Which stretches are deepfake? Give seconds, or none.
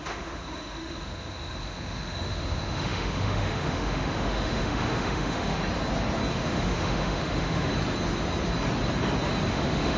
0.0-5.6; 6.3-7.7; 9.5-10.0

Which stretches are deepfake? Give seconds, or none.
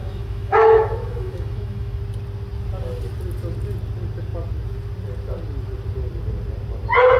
0.0-2.0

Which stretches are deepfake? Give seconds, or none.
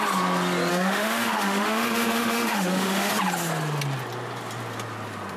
0.7-3.1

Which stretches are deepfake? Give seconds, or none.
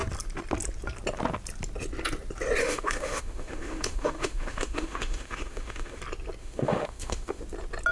2.6-6.0; 6.4-7.4